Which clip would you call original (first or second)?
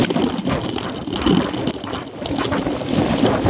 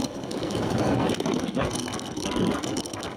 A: first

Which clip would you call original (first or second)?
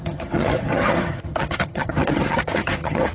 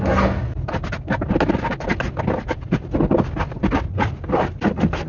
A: second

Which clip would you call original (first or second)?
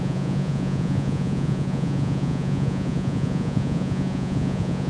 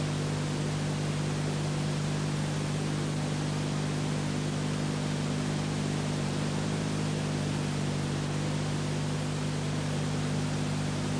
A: second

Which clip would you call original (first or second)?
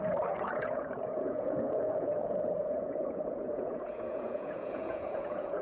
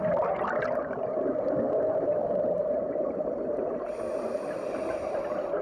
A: second